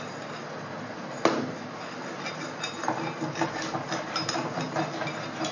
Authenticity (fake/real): fake